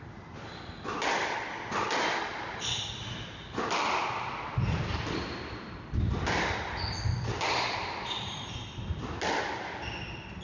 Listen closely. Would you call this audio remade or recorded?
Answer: recorded